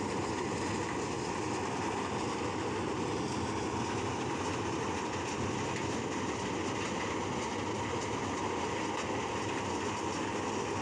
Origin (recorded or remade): recorded